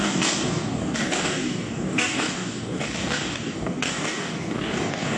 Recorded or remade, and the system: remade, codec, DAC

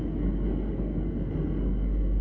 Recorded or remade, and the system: remade, codec, SNAC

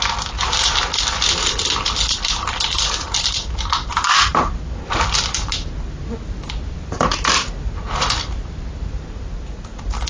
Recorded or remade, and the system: recorded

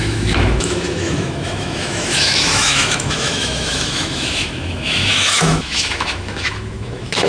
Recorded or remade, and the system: remade, autoencoder, DAC-VAE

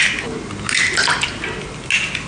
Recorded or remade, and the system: recorded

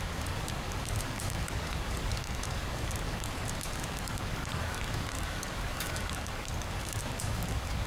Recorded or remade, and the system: remade, codec, DAC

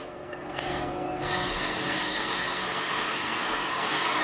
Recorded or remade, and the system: remade, codec, SNAC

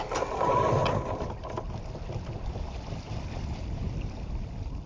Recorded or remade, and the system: recorded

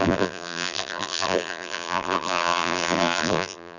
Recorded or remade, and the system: remade, vocoder, BigVGAN v2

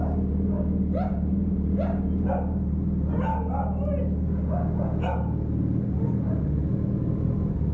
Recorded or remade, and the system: recorded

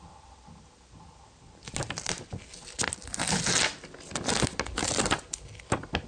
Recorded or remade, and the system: recorded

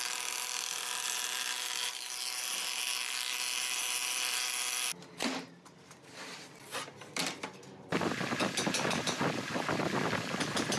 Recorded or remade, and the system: remade, vocoder, BigVGAN v2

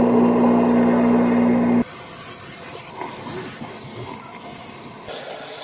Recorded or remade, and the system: recorded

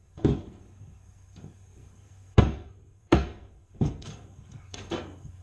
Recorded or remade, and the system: remade, codec, SNAC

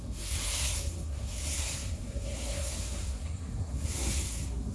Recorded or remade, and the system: remade, codec, SNAC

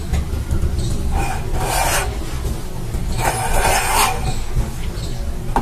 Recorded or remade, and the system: recorded